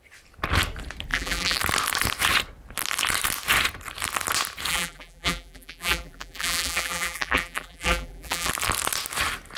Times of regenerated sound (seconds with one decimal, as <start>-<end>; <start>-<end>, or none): 1.1-1.6; 4.7-8.5

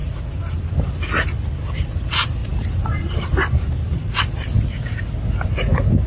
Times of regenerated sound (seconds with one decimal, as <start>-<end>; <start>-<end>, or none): 2.4-4.1

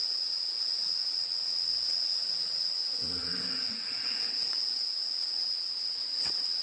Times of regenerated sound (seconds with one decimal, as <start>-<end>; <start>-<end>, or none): 0.0-6.6

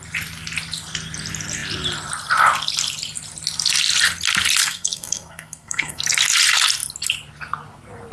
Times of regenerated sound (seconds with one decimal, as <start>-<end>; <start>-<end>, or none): 4.6-6.0

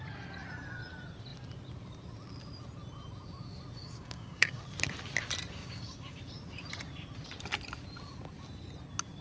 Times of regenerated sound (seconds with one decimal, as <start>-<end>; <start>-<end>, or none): 3.8-4.6; 5.6-6.2

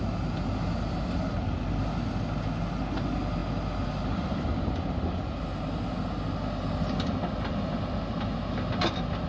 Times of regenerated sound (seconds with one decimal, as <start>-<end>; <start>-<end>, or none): none

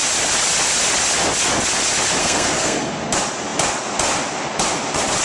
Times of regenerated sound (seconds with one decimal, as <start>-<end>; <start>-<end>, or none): 2.2-3.0